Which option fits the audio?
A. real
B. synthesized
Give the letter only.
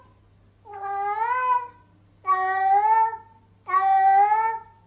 A